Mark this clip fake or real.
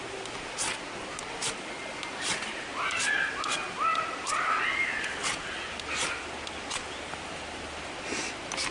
real